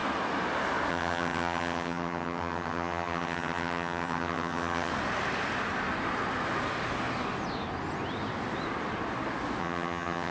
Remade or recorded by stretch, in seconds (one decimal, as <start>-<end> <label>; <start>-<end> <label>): 0.0-0.9 recorded; 0.9-4.9 remade; 4.9-9.6 recorded; 9.6-10.3 remade